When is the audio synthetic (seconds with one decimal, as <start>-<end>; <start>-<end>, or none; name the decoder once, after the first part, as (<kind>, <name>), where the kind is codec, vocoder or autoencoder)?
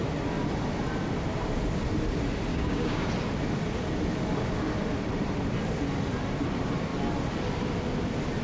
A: 2.5-3.1 (codec, DAC)